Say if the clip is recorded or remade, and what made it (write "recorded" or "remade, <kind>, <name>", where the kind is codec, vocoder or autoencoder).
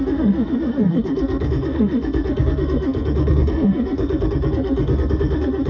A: remade, codec, SNAC